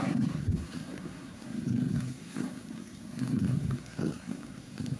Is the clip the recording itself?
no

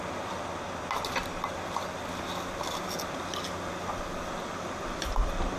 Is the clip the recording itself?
yes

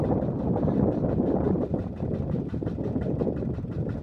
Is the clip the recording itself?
yes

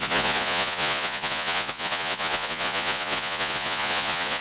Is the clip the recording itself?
no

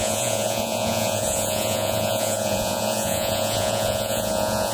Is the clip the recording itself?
no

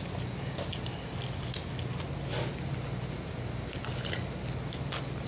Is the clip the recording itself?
yes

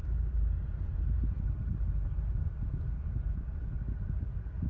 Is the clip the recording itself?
yes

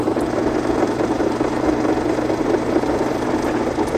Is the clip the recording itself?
yes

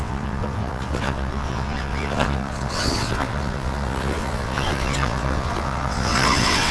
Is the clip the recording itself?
no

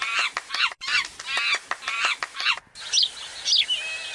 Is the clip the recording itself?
yes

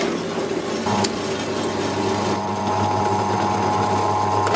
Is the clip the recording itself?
yes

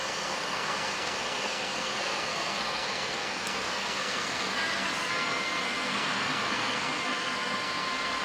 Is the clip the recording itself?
no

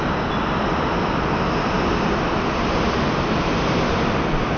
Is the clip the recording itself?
yes